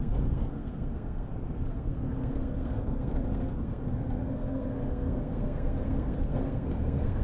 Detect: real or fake fake